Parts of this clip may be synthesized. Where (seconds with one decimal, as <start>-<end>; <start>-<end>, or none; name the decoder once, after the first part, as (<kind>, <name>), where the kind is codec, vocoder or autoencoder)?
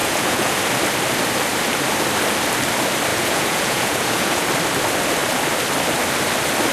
0.0-0.6 (vocoder, Vocos); 3.1-4.5